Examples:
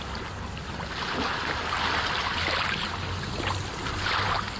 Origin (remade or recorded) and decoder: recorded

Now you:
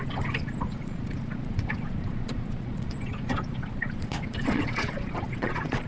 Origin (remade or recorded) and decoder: remade, vocoder, Vocos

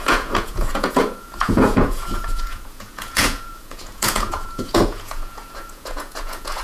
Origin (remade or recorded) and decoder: remade, vocoder, Vocos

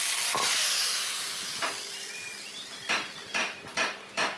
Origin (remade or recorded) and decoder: recorded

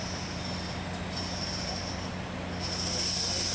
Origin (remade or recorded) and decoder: recorded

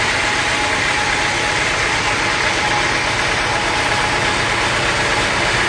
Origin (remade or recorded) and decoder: recorded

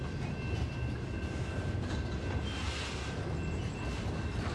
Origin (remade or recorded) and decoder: recorded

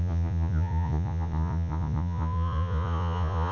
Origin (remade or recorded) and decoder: remade, vocoder, Vocos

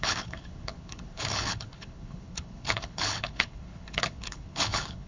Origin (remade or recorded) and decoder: remade, codec, HILCodec